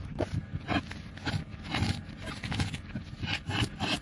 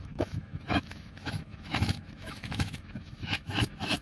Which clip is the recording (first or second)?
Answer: first